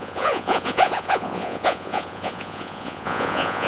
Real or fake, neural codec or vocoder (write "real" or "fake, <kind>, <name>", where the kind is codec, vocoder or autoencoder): fake, vocoder, Vocos